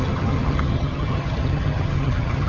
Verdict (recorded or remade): remade